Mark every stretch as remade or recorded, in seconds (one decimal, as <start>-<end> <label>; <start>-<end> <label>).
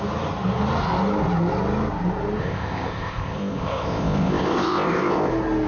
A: 0.0-2.4 recorded; 2.4-5.3 remade; 5.3-5.7 recorded